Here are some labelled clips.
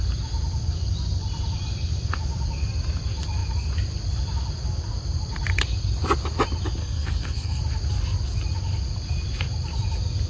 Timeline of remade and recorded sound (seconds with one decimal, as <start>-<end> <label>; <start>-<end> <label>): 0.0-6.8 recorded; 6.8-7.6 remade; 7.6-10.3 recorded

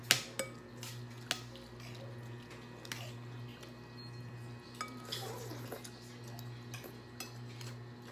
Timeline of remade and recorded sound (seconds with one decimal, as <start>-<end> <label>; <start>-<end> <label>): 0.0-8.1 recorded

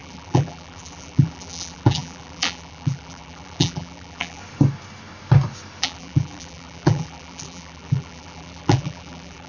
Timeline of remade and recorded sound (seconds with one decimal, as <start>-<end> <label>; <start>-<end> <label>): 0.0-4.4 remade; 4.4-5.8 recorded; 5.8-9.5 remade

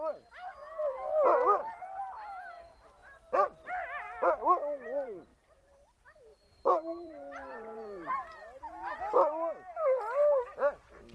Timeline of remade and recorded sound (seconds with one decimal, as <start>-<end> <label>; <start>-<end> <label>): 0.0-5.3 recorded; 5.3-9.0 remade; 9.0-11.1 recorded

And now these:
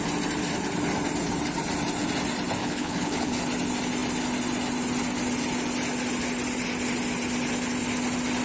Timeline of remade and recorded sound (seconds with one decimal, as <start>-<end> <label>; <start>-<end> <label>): 0.0-2.6 recorded; 2.6-3.4 remade; 3.4-8.4 recorded